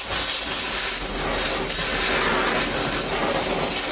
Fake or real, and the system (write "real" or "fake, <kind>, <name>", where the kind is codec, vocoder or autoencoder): real